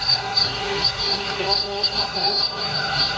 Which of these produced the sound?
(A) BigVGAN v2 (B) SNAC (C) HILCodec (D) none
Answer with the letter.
B